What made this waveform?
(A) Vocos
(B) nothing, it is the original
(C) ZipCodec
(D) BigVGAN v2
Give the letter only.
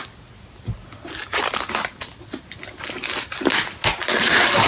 B